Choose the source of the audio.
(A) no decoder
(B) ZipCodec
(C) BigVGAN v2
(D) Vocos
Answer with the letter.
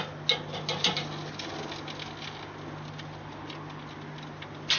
A